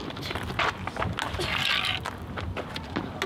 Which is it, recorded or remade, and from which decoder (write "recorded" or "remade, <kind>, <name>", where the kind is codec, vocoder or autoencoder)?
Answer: recorded